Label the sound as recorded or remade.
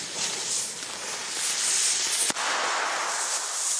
recorded